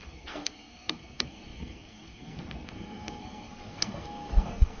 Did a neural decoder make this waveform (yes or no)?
yes